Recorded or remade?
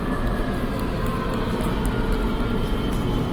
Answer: recorded